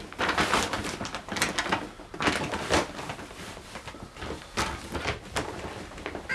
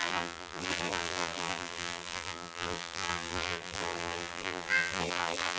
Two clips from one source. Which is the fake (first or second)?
second